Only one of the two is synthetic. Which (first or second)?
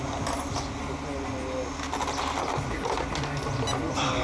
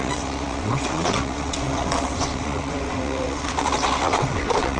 second